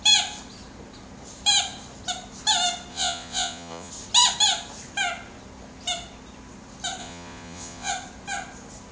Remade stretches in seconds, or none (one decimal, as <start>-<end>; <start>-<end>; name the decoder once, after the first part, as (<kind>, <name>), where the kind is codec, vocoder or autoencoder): 2.9-3.9 (vocoder, Vocos); 7.0-7.9